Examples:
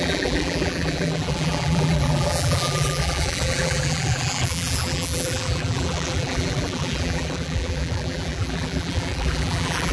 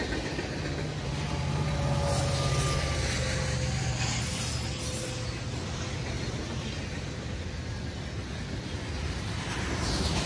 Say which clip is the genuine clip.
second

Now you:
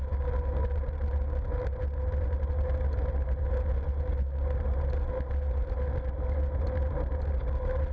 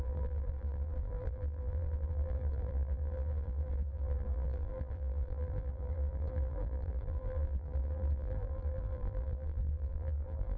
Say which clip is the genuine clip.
first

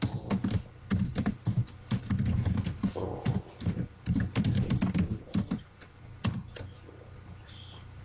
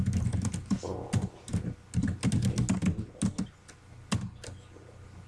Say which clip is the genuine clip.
second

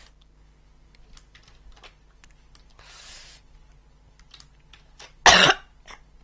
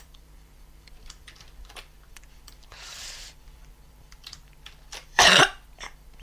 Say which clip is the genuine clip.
first